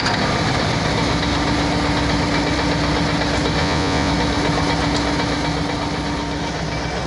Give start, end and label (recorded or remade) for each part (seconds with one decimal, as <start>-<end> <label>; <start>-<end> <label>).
0.0-3.6 recorded; 3.6-4.1 remade; 4.1-7.1 recorded